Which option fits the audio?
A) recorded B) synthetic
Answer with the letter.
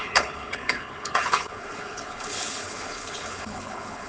B